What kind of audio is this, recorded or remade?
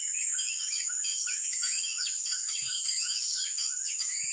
remade